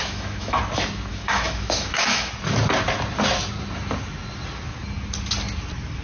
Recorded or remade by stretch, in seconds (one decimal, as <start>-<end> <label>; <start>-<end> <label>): 0.0-0.6 remade; 0.6-1.1 recorded; 1.1-2.3 remade; 2.3-6.0 recorded